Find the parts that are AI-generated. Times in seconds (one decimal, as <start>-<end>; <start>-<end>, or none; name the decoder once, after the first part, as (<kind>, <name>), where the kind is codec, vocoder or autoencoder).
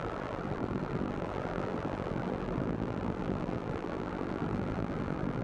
0.0-5.4 (vocoder, BigVGAN v2)